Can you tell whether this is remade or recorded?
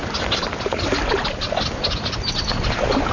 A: recorded